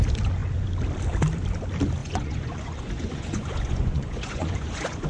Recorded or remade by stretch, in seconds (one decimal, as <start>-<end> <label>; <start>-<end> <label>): 0.0-2.0 recorded; 2.0-5.1 remade